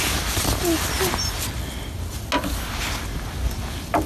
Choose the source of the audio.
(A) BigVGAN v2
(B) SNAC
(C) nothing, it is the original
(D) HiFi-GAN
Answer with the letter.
C